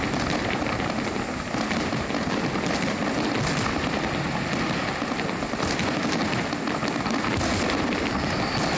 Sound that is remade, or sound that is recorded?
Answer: recorded